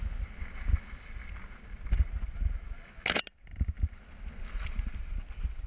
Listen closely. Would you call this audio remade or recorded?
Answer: recorded